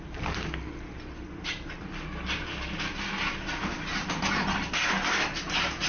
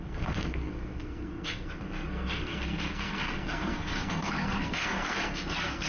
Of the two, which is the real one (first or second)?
first